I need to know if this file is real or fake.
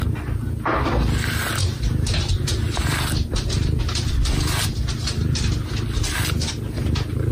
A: real